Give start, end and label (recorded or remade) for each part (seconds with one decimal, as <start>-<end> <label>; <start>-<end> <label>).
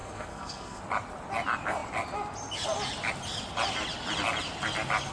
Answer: 0.0-0.8 remade; 0.8-5.1 recorded